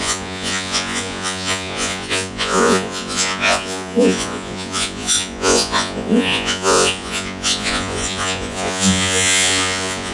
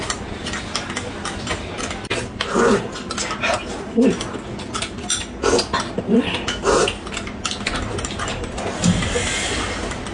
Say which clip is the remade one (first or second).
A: first